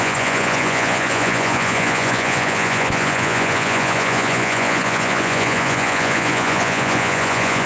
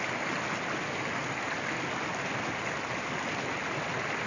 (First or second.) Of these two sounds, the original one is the second